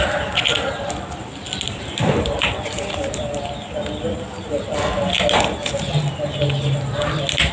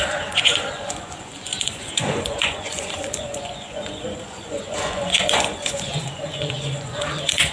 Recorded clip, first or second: first